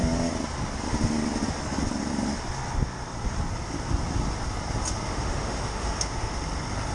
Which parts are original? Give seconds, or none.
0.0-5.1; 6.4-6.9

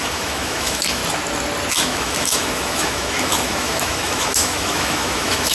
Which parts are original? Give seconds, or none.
1.0-1.7

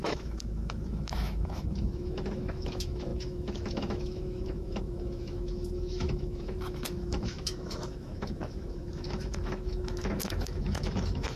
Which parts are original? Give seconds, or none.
none

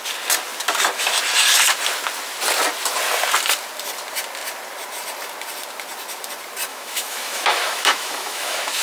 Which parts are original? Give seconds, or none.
0.0-6.7